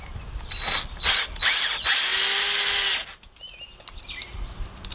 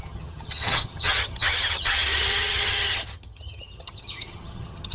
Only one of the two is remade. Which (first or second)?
second